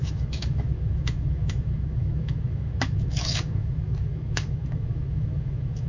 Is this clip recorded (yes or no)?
no